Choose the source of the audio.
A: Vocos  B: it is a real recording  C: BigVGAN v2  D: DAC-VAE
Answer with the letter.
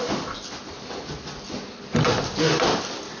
B